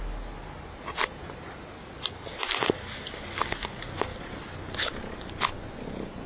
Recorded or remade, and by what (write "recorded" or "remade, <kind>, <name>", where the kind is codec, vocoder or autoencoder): recorded